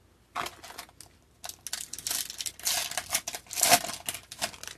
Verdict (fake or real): real